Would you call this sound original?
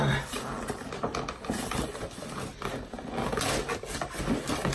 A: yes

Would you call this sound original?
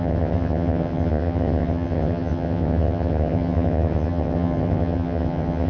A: no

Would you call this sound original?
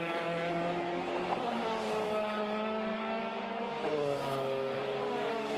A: no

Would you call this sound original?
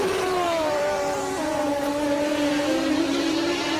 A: no